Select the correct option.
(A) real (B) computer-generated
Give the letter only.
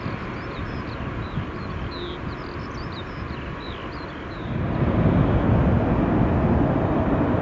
A